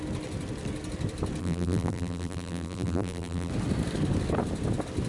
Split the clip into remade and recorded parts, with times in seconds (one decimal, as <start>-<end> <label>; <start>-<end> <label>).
0.0-1.4 recorded; 1.4-3.5 remade; 3.5-5.1 recorded